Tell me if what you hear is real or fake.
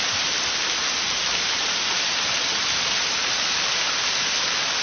real